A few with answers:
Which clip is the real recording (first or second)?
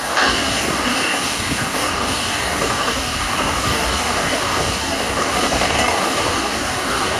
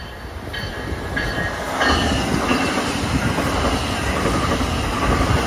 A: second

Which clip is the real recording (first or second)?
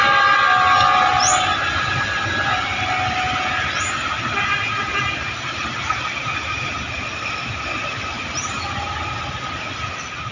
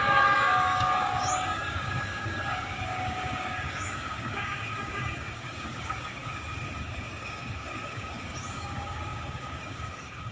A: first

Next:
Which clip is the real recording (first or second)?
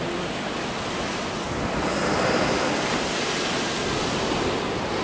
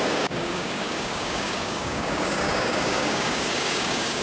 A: first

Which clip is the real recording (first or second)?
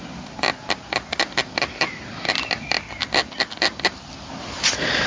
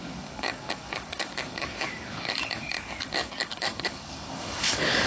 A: first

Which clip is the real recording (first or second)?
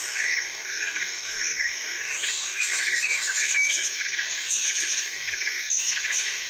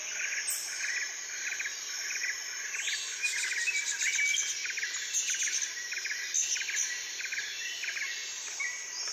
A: second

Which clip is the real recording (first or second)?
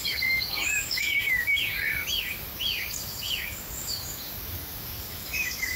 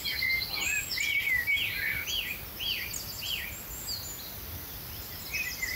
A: second